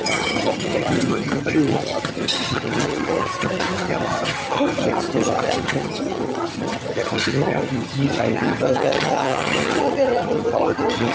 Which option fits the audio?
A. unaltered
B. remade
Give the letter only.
B